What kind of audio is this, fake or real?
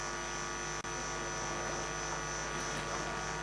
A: real